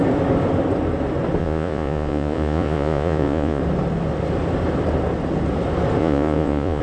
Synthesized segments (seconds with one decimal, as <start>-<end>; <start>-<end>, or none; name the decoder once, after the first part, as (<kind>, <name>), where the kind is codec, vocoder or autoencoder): 1.4-3.6 (vocoder, Vocos); 6.0-6.8